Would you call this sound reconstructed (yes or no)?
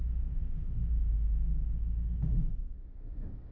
yes